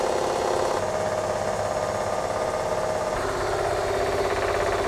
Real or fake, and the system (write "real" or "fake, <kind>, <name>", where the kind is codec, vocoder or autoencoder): real